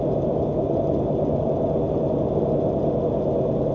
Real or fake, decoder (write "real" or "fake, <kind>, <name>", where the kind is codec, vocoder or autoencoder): real